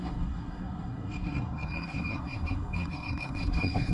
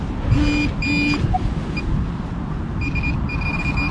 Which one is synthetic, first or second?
first